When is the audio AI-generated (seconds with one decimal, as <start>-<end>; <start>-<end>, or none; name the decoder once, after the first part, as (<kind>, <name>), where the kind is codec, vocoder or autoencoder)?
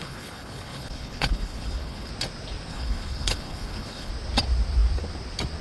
0.0-2.1 (codec, HILCodec); 2.7-4.1